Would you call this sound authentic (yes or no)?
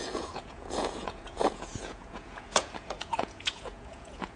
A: no